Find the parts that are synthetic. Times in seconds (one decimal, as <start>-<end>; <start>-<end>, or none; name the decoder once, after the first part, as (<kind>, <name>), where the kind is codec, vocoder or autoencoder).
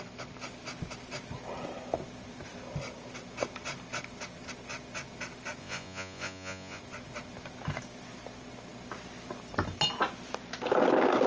5.6-6.8 (vocoder, Vocos)